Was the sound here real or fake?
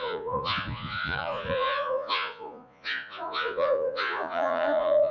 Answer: fake